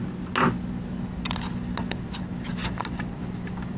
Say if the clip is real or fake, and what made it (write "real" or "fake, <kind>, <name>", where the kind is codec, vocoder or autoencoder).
real